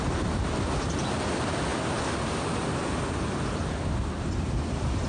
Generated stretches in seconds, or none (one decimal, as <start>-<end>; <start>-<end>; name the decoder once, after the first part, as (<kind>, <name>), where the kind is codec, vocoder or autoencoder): none